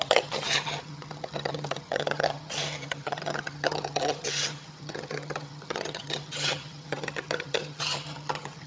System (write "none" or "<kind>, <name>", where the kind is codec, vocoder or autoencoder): vocoder, HiFi-GAN